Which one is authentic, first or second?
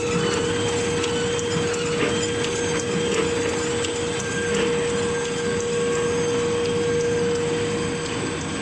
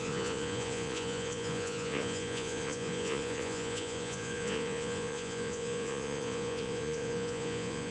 first